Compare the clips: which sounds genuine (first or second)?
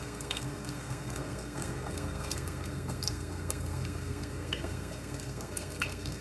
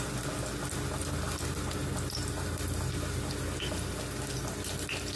second